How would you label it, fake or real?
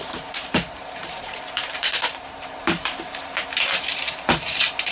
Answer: fake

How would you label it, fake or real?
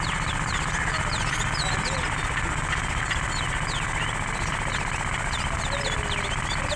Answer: real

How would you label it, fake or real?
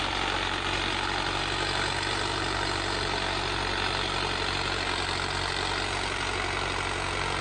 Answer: real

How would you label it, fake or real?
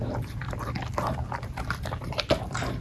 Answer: fake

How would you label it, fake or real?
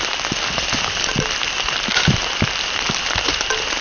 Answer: real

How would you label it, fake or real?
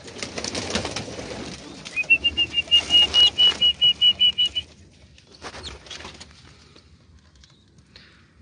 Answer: real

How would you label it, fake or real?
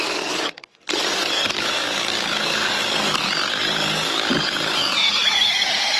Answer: fake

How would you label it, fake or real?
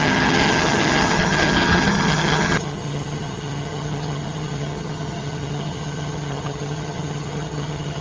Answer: fake